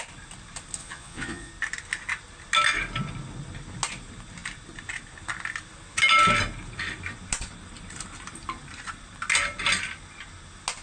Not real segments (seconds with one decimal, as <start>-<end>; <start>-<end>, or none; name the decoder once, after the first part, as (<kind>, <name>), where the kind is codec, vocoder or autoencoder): 0.8-1.5 (vocoder, Vocos)